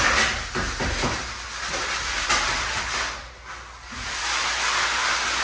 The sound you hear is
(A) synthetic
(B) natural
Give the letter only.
B